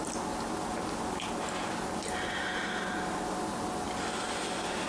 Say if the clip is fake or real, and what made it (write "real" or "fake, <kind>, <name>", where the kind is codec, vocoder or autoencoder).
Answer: real